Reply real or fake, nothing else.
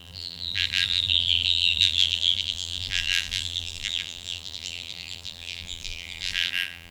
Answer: fake